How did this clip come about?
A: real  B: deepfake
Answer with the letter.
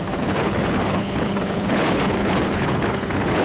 B